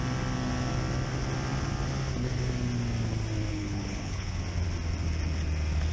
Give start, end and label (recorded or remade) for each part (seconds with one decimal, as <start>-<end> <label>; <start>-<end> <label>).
0.0-3.5 recorded; 3.5-4.4 remade; 4.4-5.9 recorded